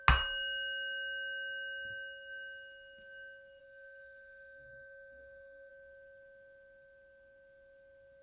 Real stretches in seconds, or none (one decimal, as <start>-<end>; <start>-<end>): 0.0-3.6; 5.7-8.2